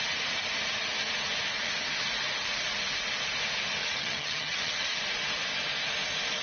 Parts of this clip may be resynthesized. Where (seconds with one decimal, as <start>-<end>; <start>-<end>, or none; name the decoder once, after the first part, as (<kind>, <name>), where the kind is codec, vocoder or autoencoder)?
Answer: 3.8-5.0 (vocoder, HiFi-GAN)